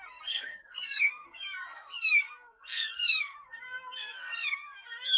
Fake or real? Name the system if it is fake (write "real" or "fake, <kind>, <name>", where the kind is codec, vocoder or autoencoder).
fake, codec, SNAC